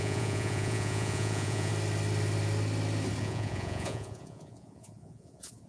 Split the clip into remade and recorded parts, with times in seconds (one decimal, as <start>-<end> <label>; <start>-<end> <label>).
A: 0.0-1.7 remade; 1.7-3.2 recorded; 3.2-5.7 remade